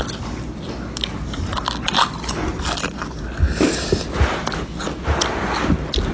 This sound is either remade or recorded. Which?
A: recorded